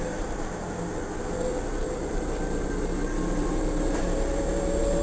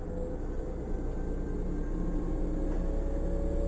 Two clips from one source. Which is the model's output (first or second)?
first